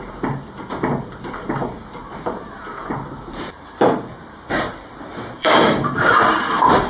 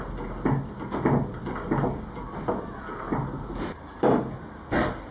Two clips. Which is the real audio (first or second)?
second